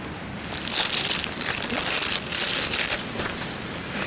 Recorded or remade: recorded